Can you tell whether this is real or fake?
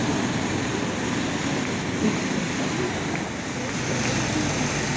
real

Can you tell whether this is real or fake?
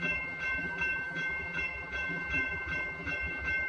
fake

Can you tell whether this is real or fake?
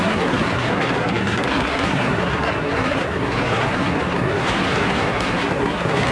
fake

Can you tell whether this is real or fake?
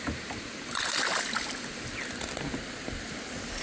real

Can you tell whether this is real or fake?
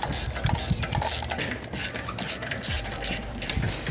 fake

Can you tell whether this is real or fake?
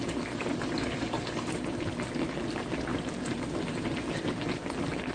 real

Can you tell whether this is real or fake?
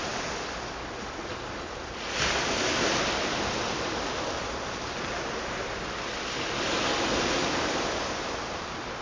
real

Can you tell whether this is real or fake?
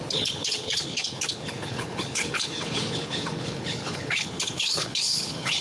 fake